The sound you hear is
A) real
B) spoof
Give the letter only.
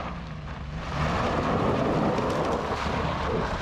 B